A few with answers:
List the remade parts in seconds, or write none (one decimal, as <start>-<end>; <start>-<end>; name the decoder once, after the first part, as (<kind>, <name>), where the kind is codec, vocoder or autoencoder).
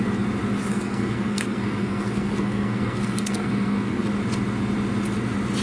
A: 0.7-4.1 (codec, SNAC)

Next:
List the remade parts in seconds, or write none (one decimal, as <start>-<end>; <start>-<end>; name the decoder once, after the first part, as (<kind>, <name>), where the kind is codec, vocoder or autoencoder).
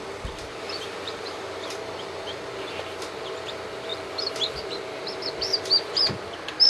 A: none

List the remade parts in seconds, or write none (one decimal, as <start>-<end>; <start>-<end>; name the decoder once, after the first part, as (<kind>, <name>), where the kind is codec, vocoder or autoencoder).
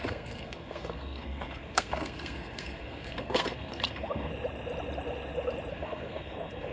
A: 0.0-4.3 (codec, SNAC); 5.7-6.7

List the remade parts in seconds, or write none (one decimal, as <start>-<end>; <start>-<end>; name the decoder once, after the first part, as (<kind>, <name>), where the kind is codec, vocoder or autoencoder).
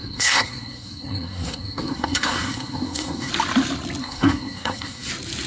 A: 0.0-3.3 (codec, SNAC); 4.0-5.1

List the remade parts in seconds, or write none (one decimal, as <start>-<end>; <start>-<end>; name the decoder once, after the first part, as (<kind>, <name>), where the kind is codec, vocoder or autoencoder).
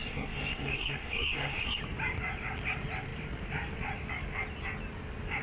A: 0.0-1.8 (codec, SNAC)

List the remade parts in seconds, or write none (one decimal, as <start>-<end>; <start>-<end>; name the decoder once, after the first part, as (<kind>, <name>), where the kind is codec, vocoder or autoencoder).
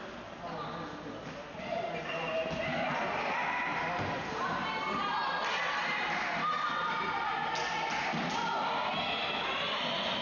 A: none